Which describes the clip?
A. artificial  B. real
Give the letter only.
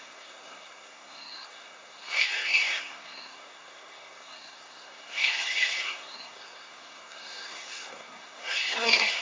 A